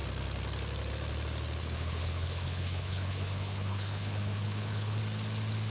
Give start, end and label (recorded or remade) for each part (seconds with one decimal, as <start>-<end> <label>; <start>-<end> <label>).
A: 0.0-1.6 recorded; 1.6-5.0 remade; 5.0-5.7 recorded